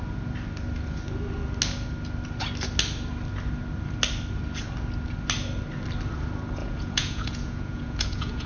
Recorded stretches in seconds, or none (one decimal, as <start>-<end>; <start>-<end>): 0.0-6.6